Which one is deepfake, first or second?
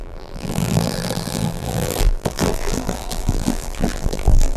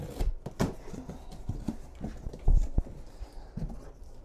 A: first